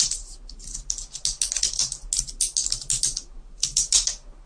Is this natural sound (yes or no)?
yes